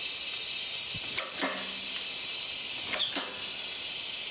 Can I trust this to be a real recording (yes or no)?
yes